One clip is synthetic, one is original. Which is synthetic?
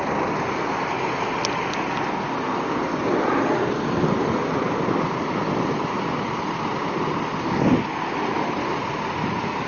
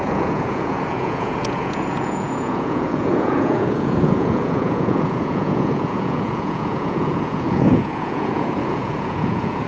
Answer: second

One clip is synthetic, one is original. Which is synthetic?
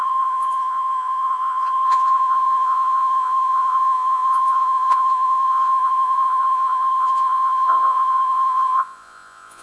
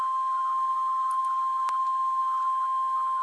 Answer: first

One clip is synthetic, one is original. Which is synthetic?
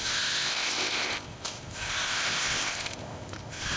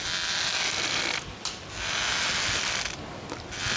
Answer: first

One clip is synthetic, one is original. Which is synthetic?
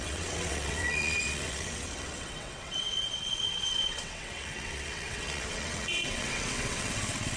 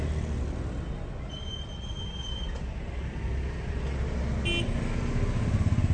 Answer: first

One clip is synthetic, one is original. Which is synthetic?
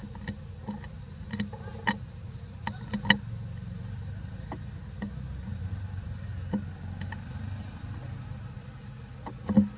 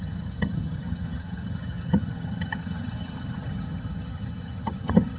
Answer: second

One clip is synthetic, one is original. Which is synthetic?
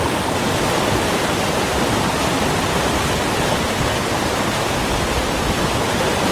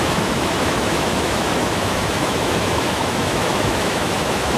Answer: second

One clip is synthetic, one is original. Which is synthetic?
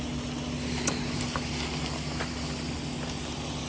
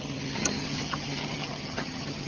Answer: second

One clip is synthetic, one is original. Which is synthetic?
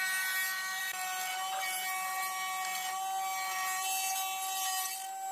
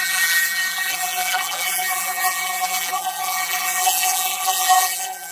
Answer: second